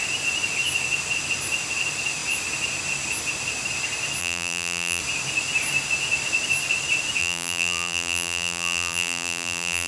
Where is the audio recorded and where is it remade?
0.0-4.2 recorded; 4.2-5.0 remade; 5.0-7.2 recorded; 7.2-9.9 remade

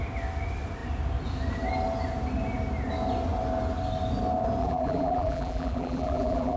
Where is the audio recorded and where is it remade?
0.0-4.6 recorded; 4.6-6.6 remade

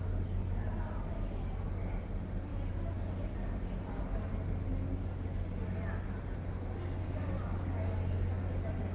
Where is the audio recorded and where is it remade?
0.0-8.9 recorded

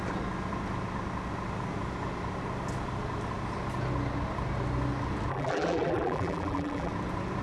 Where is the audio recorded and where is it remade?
0.0-5.3 recorded; 5.3-6.9 remade; 6.9-7.4 recorded

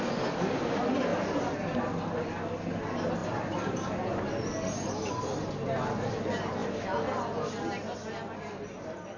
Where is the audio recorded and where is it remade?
0.0-3.2 recorded; 3.2-5.1 remade; 5.1-9.2 recorded

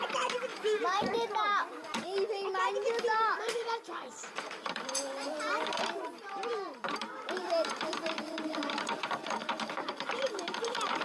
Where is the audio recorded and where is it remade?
0.0-11.0 remade

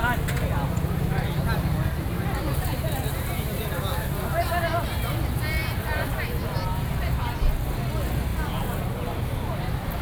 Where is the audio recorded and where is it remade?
0.0-5.6 recorded; 5.6-7.2 remade; 7.2-8.3 recorded; 8.3-10.0 remade

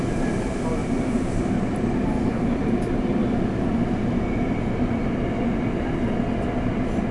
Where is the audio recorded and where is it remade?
0.0-0.8 recorded; 0.8-2.6 remade; 2.6-7.1 recorded